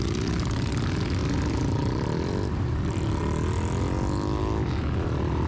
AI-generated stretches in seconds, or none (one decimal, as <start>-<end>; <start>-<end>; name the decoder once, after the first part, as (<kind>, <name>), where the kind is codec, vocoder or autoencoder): 1.2-3.2 (vocoder, BigVGAN v2)